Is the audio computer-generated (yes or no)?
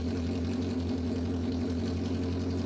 no